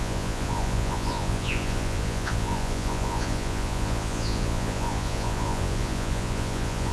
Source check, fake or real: fake